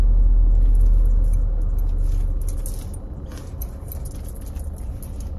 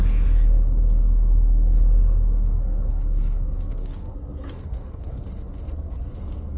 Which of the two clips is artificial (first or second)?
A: second